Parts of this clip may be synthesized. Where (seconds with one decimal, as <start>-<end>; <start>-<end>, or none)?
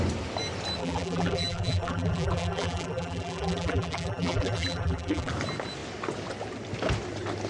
0.8-5.3